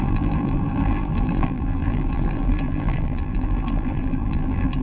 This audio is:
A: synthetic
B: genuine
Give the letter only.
A